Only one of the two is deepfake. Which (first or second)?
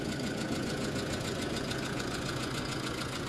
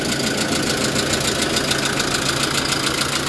first